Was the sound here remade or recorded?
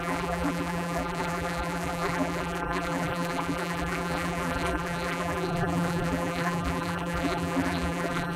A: remade